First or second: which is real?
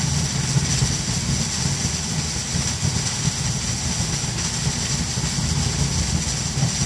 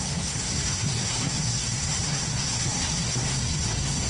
first